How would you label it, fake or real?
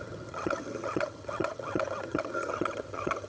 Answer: fake